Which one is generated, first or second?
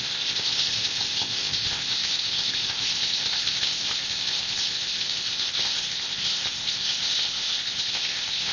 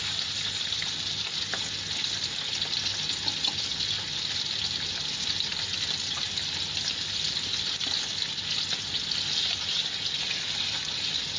first